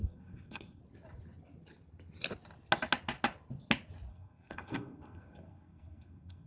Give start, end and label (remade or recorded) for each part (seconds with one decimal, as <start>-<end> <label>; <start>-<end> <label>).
0.0-0.8 remade; 0.8-4.1 recorded; 4.1-6.5 remade